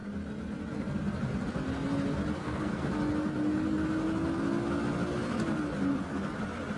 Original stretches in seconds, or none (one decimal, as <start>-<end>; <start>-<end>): 0.0-2.4; 2.9-6.8